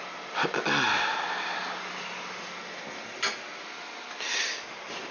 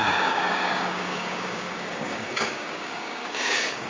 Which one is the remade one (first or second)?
second